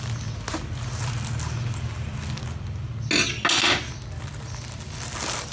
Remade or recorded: recorded